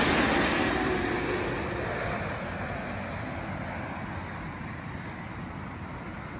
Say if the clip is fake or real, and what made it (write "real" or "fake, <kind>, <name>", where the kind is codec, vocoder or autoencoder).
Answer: real